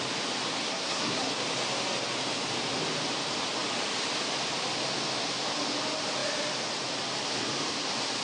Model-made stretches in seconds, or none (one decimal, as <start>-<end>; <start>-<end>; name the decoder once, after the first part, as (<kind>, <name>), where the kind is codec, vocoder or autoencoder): 0.6-1.3 (codec, SNAC)